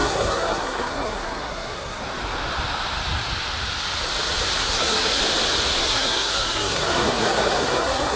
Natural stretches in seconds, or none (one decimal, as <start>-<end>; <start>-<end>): 2.0-4.6; 5.2-5.8